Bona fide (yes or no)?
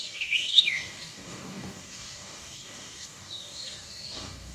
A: no